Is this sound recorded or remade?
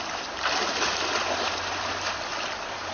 recorded